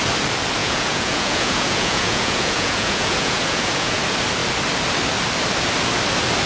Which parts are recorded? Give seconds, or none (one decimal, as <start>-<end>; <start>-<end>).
0.0-0.6; 4.0-6.5